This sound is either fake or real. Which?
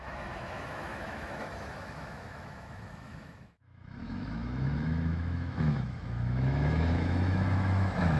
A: fake